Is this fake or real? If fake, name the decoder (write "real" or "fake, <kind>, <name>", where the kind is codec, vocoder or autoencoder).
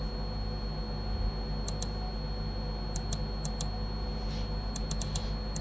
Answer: real